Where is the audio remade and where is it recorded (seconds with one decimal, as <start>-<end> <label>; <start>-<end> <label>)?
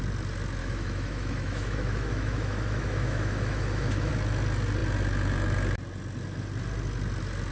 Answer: 0.0-0.6 recorded; 0.6-4.1 remade; 4.1-7.5 recorded